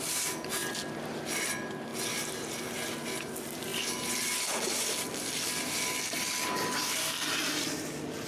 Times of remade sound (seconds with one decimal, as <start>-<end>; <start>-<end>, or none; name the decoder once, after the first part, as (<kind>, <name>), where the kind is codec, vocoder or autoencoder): none